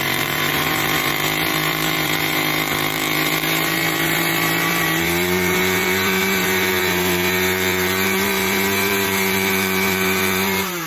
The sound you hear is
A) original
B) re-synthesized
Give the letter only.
B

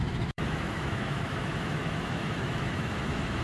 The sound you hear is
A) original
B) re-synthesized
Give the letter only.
B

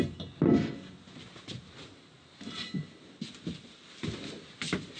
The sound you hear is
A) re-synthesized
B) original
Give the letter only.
B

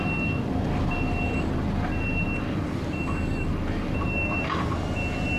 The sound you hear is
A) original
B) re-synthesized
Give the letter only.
A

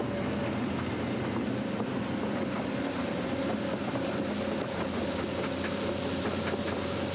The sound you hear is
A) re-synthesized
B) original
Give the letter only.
B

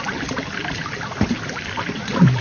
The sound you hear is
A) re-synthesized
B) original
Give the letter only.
B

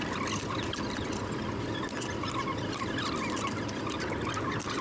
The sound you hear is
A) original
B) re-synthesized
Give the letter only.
A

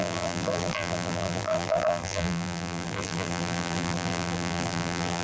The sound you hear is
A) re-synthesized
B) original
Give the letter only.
A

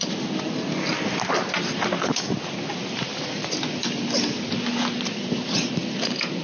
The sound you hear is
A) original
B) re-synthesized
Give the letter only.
A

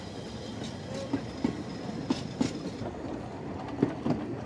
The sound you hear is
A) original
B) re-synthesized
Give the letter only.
A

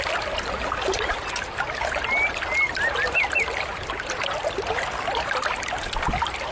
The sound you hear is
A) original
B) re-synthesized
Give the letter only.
A